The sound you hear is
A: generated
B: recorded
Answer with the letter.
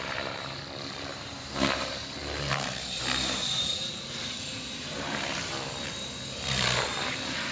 A